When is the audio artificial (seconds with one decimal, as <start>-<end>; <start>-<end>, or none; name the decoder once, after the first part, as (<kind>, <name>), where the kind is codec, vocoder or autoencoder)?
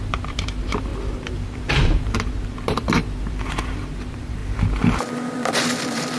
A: 0.0-4.4 (vocoder, BigVGAN v2); 5.3-6.2